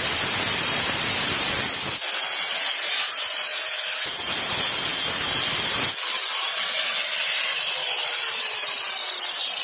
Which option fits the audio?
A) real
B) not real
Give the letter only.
A